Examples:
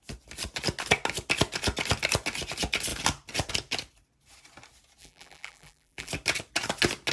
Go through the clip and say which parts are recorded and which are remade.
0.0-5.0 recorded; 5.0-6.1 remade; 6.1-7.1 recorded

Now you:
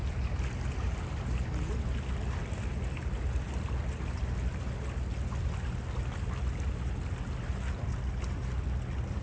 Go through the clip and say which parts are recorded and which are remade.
0.0-1.0 remade; 1.0-9.2 recorded

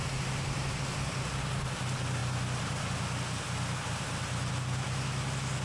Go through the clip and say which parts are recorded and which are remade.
0.0-0.8 remade; 0.8-5.6 recorded

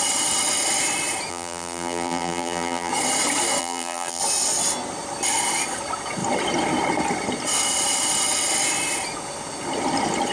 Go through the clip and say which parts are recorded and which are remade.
0.0-1.3 recorded; 1.3-2.9 remade; 2.9-3.6 recorded; 3.6-4.2 remade; 4.2-10.3 recorded

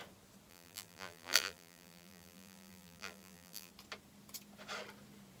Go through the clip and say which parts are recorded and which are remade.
0.0-0.5 recorded; 0.5-3.7 remade; 3.7-5.4 recorded

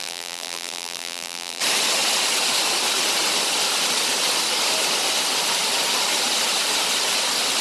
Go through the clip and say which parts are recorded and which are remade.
0.0-1.6 remade; 1.6-7.6 recorded

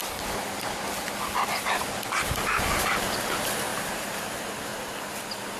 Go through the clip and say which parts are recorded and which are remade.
0.0-3.7 recorded; 3.7-4.3 remade; 4.3-5.6 recorded

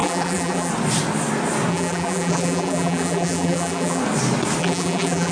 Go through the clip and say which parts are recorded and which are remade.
0.0-0.7 remade; 0.7-1.7 recorded; 1.7-4.0 remade; 4.0-4.6 recorded; 4.6-5.3 remade